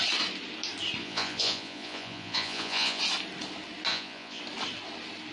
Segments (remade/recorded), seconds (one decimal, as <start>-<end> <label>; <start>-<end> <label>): 0.0-1.0 recorded; 1.0-3.0 remade; 3.0-3.9 recorded; 3.9-4.4 remade; 4.4-5.3 recorded